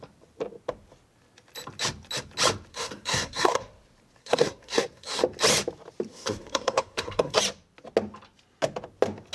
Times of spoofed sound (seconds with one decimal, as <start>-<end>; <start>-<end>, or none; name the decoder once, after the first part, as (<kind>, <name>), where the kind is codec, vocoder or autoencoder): 2.7-3.7 (codec, SNAC); 4.2-5.2; 6.1-7.4